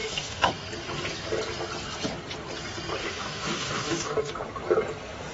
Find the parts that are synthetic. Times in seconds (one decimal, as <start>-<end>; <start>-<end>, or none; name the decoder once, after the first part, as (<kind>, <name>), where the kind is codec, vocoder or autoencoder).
0.0-0.5 (autoencoder, DAC-VAE); 3.0-4.3